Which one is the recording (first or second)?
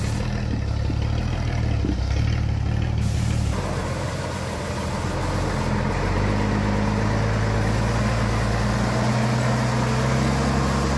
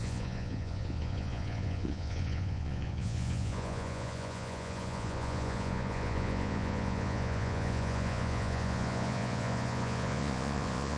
first